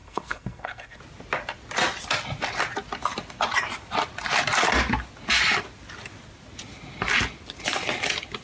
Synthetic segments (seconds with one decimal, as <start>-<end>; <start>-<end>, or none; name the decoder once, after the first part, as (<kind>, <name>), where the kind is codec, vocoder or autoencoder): 0.0-1.0 (codec, SNAC)